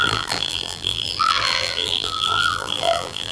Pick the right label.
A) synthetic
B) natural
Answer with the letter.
A